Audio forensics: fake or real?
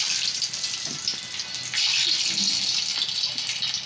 real